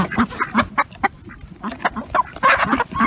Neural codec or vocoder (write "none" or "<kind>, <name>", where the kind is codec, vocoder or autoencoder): none